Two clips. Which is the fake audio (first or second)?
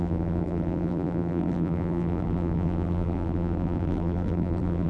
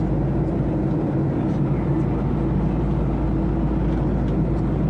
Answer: first